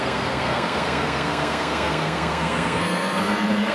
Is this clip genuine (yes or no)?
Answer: no